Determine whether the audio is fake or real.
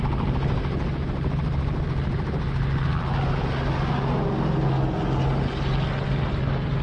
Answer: real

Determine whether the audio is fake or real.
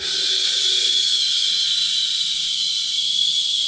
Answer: real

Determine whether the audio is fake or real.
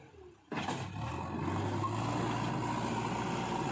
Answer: real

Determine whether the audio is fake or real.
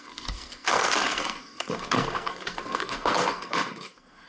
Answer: fake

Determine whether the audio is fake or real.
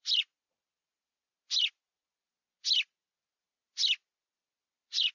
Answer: real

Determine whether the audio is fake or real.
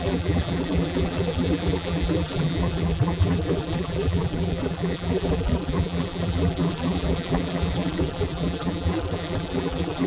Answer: fake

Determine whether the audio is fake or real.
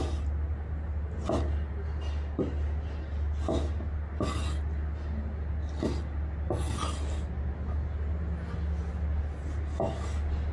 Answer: real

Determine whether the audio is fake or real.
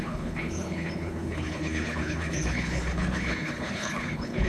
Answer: fake